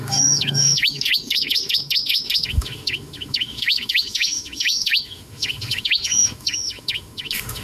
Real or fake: fake